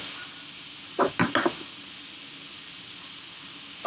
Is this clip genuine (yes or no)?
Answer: yes